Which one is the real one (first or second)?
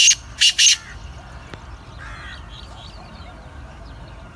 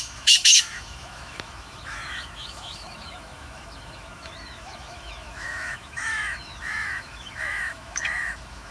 first